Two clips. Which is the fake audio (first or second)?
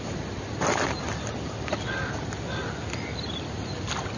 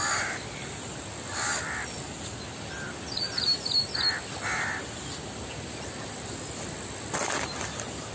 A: first